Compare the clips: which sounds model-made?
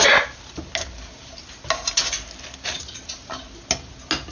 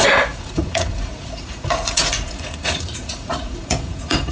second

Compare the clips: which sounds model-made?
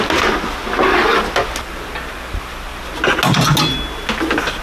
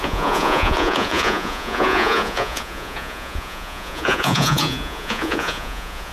second